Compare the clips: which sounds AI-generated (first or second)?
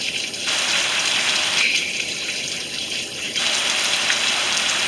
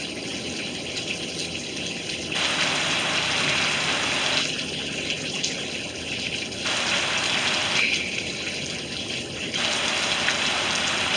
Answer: first